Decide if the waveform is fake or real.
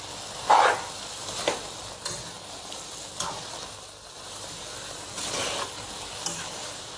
real